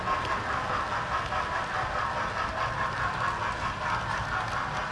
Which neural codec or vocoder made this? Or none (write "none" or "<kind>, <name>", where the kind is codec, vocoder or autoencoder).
none